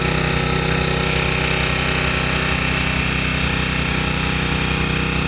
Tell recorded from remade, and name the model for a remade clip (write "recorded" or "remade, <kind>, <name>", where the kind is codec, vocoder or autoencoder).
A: recorded